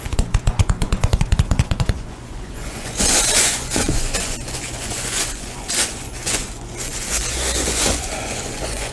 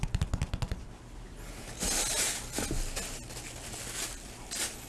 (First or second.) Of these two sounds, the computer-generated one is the first